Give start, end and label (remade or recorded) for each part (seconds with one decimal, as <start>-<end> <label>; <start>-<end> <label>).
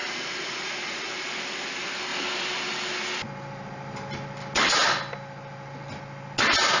0.0-1.1 remade; 1.1-6.8 recorded